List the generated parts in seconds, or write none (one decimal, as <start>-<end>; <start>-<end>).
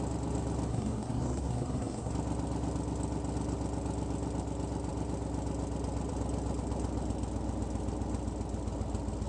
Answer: 0.7-2.1